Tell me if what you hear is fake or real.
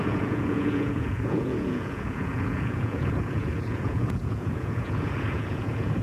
fake